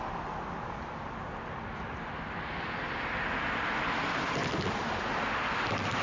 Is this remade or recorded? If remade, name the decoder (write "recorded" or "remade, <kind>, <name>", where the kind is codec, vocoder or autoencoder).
recorded